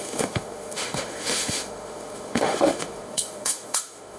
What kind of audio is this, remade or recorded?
remade